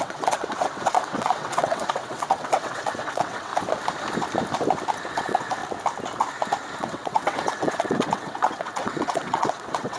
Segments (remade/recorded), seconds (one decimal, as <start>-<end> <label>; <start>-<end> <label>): 0.0-3.5 remade; 3.5-5.1 recorded; 5.1-5.6 remade; 5.6-6.8 recorded; 6.8-10.0 remade

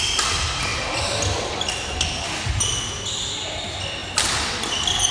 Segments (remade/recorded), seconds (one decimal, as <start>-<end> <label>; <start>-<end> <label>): 0.0-5.1 recorded

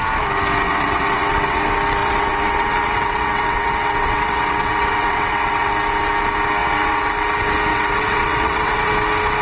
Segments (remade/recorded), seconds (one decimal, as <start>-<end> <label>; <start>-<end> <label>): 0.0-0.7 recorded; 0.7-1.6 remade; 1.6-2.0 recorded; 2.0-5.7 remade; 5.7-6.6 recorded; 6.6-7.1 remade; 7.1-7.7 recorded; 7.7-8.9 remade; 8.9-9.4 recorded

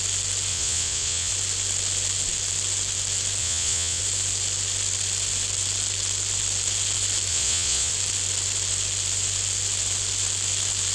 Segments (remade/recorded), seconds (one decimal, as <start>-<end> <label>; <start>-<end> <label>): 0.0-0.5 recorded; 0.5-1.3 remade; 1.3-3.4 recorded; 3.4-4.0 remade; 4.0-7.3 recorded; 7.3-7.9 remade; 7.9-10.9 recorded

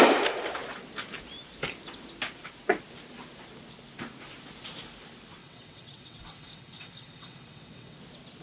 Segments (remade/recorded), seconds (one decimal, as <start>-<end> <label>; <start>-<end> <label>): 0.0-5.4 recorded; 5.4-8.0 remade; 8.0-8.4 recorded

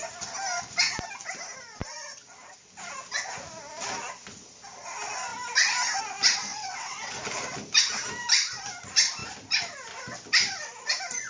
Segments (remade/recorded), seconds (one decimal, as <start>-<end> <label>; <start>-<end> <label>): 0.0-6.5 recorded; 6.5-7.2 remade; 7.2-11.3 recorded

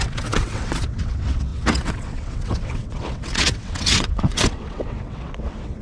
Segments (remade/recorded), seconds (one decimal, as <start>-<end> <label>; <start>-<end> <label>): 0.0-5.8 remade

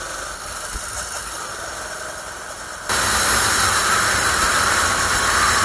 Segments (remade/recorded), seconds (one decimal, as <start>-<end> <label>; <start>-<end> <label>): 0.0-5.6 recorded